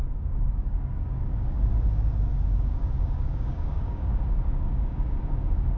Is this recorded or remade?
remade